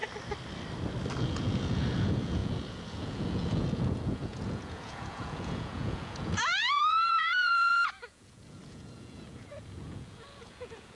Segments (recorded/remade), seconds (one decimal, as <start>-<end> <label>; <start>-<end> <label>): 0.0-1.2 recorded; 1.2-11.0 remade